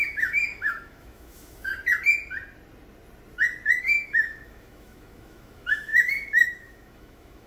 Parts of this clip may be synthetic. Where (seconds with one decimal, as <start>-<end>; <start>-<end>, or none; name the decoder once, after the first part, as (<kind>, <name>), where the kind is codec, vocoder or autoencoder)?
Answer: 0.0-1.7 (autoencoder, DAC-VAE); 3.8-7.5